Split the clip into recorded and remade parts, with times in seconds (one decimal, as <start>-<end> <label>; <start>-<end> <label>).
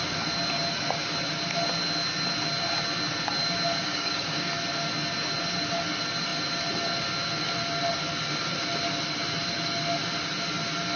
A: 0.0-3.8 recorded; 3.8-4.5 remade; 4.5-11.0 recorded